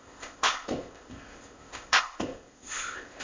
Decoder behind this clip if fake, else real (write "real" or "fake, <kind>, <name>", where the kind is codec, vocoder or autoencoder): fake, codec, ZipCodec